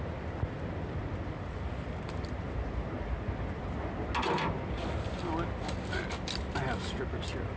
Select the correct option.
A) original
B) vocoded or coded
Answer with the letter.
A